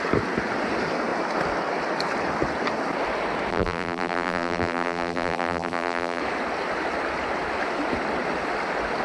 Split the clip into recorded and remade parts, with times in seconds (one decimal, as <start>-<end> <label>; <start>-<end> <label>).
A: 0.0-3.5 recorded; 3.5-6.2 remade; 6.2-9.0 recorded